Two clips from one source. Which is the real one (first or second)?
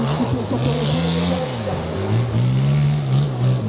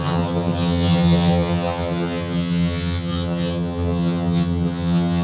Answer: first